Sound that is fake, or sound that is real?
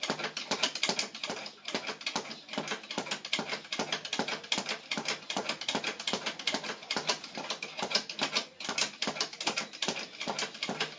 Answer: real